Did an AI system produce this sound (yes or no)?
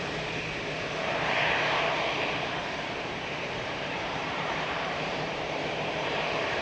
yes